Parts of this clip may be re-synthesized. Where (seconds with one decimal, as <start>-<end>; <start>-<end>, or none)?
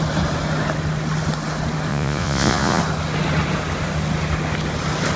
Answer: 1.9-2.8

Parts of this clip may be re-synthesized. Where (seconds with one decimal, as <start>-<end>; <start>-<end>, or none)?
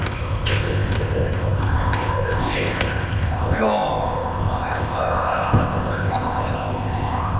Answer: 0.0-7.4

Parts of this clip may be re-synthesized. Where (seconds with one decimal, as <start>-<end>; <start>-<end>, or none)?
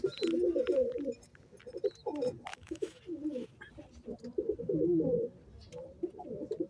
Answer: 2.5-3.0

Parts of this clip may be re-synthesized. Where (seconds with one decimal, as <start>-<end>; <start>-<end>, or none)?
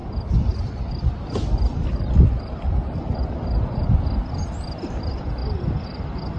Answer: 0.0-6.4